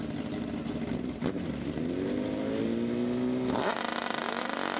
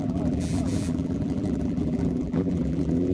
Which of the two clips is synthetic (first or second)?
second